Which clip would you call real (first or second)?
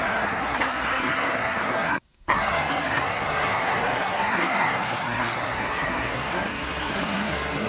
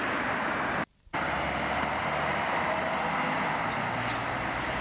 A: second